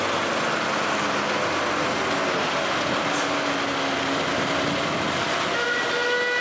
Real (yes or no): yes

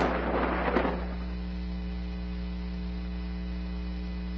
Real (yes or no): yes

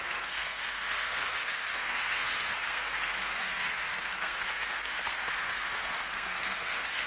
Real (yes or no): no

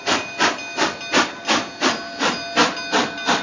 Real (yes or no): yes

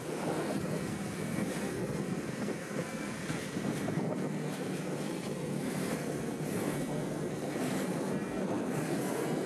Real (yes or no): no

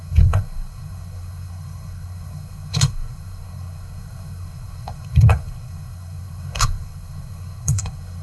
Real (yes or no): no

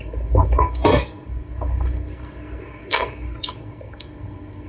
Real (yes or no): no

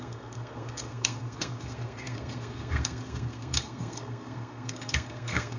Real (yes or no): no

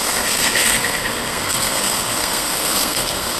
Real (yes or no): no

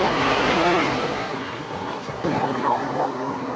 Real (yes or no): no